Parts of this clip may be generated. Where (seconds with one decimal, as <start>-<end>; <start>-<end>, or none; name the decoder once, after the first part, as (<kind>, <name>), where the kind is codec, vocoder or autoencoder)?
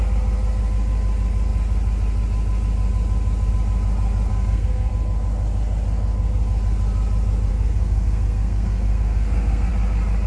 4.3-4.9 (codec, SNAC); 7.5-9.7